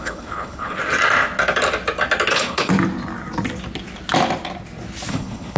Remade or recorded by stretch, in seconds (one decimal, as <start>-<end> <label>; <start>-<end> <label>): 0.0-0.8 remade; 0.8-2.3 recorded; 2.3-2.7 remade; 2.7-5.1 recorded; 5.1-5.6 remade